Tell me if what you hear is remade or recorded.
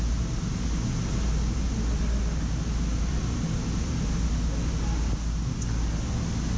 recorded